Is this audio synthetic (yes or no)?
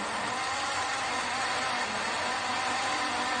no